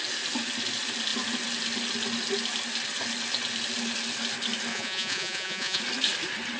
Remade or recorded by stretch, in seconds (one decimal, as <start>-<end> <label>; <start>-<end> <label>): 0.0-4.7 recorded; 4.7-5.8 remade; 5.8-6.6 recorded